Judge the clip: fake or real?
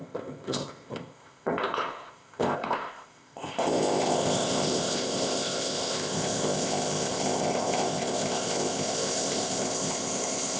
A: fake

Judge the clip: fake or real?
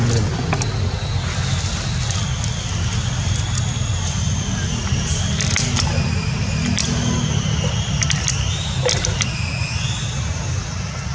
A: real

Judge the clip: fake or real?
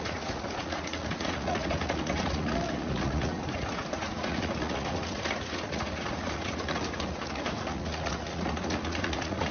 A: fake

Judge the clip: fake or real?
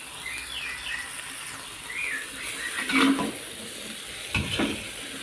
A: real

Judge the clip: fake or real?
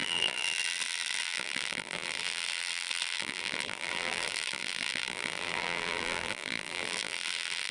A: fake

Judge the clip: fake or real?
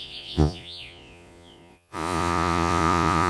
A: fake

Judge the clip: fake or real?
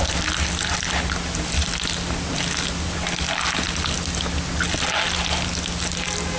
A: real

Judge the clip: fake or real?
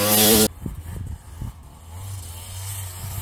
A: real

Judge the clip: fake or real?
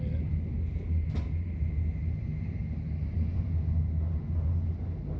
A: real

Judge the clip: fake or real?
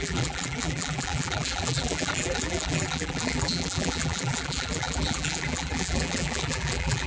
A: fake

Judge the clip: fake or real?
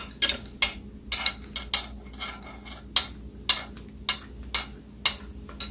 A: real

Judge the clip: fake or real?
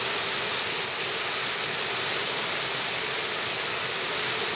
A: real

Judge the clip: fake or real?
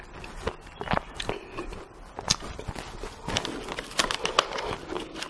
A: real